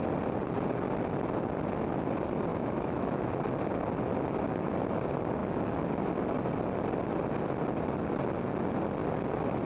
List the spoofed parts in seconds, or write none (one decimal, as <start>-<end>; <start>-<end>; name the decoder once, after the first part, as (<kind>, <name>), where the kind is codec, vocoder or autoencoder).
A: 2.5-3.3 (autoencoder, DAC-VAE)